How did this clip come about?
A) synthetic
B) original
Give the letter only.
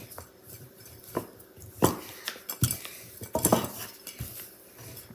B